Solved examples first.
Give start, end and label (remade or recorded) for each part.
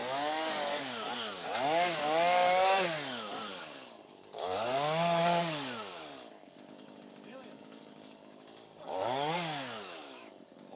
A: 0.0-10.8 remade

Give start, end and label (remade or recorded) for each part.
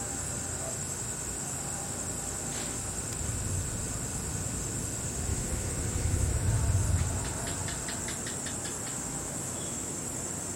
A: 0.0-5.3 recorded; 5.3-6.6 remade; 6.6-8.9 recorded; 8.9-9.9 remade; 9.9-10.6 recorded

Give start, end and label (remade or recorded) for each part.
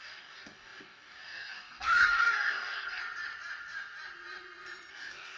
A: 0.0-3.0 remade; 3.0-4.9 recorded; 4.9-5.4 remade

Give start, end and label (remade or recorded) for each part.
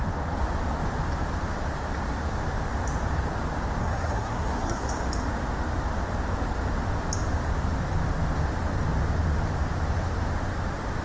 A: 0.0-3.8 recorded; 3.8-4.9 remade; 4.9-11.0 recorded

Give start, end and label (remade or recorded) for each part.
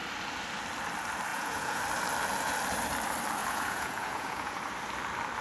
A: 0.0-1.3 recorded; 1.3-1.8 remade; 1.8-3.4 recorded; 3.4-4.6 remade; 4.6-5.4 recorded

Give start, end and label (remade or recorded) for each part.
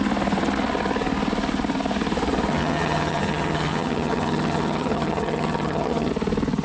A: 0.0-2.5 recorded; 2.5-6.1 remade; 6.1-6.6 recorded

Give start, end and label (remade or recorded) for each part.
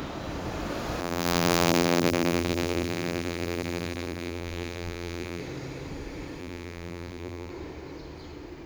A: 0.0-1.0 recorded; 1.0-5.4 remade; 5.4-6.4 recorded; 6.4-7.5 remade; 7.5-8.7 recorded